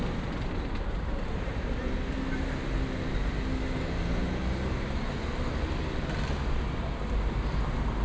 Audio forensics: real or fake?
real